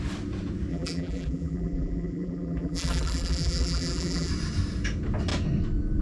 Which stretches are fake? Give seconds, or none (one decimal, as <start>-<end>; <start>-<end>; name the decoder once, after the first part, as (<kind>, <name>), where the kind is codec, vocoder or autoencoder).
0.7-4.3 (vocoder, BigVGAN v2)